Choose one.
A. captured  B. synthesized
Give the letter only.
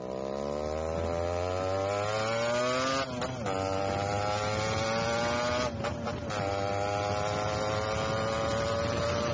A